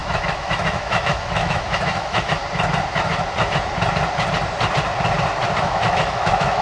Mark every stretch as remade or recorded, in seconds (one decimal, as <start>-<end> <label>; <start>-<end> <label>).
0.0-2.4 remade; 2.4-5.6 recorded; 5.6-6.6 remade